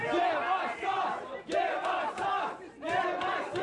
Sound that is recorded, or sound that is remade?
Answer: recorded